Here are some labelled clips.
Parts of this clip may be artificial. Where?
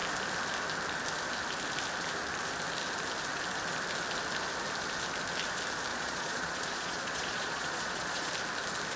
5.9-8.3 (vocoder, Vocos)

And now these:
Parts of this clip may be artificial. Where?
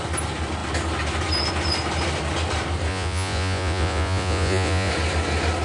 2.9-4.9 (vocoder, Vocos)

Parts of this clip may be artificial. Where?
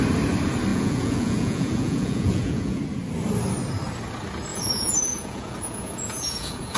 0.7-2.8 (vocoder, Vocos); 4.5-6.8